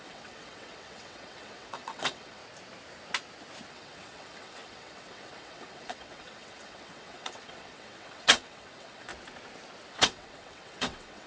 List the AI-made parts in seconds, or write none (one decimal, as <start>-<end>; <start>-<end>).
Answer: 0.0-2.4; 3.7-9.1; 9.9-11.3